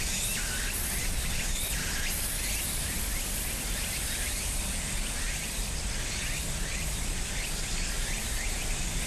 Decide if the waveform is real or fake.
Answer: real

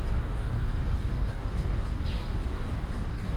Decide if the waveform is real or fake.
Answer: fake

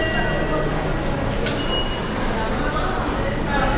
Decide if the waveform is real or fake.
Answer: real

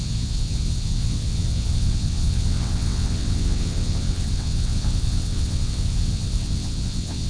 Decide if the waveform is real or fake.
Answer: fake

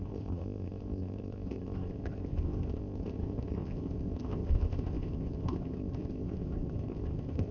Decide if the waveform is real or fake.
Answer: fake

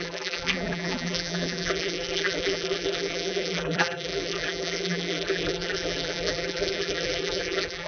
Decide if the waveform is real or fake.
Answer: fake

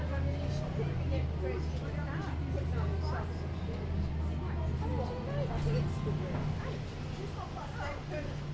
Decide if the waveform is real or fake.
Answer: real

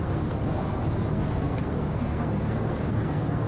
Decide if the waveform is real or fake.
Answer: fake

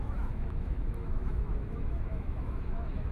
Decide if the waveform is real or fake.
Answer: fake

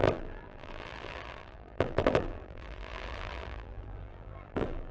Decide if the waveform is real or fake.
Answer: fake